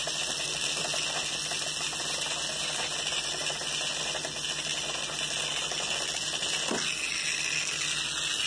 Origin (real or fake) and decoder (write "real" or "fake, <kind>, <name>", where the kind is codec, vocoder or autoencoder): real